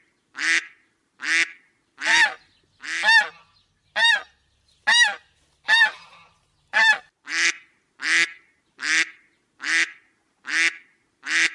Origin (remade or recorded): recorded